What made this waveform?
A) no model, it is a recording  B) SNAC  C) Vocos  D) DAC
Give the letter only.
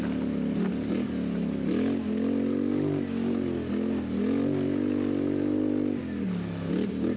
A